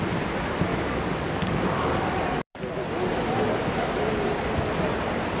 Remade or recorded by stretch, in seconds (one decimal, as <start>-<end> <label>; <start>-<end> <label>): 0.0-0.7 recorded; 0.7-2.6 remade; 2.6-5.4 recorded